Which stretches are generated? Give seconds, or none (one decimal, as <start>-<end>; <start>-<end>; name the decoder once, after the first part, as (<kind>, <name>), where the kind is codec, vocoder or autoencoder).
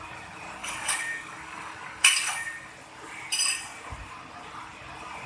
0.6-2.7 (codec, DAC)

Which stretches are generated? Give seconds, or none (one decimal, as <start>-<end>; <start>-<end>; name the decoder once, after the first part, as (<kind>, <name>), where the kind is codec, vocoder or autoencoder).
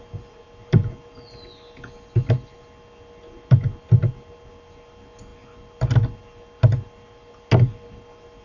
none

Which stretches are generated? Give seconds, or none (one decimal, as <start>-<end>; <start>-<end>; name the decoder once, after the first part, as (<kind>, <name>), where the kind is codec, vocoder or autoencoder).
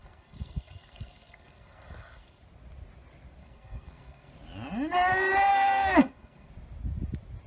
0.0-2.4 (codec, SNAC); 3.4-4.3; 5.5-6.5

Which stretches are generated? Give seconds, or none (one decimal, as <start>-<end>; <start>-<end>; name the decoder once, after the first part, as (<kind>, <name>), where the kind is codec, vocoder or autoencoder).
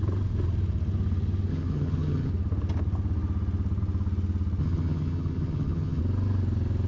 1.5-2.3 (vocoder, HiFi-GAN); 4.6-6.0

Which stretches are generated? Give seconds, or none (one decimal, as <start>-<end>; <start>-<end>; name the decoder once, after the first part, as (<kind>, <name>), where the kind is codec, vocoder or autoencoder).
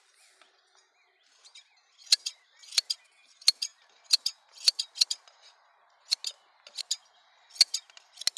none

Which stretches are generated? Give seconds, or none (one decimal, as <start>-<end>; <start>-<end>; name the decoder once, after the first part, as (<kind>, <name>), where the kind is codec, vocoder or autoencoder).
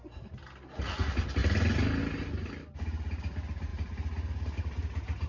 none